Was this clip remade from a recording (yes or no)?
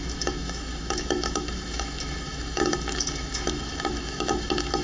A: yes